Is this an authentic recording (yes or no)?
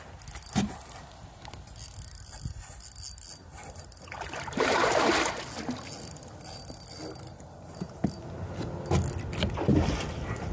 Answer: yes